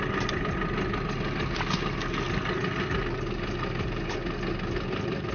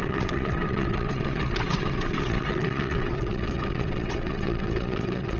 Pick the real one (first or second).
first